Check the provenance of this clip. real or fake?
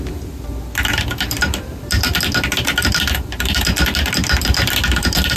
real